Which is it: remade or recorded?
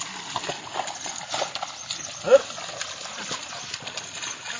recorded